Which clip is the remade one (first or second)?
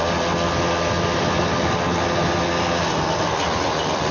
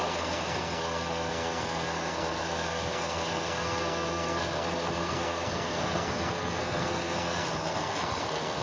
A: second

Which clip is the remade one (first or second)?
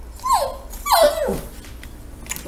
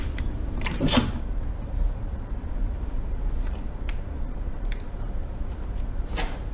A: second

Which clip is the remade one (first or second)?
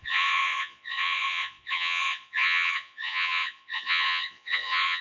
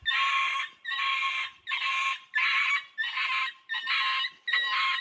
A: first